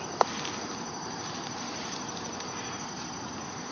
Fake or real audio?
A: fake